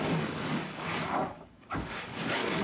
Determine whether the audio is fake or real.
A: fake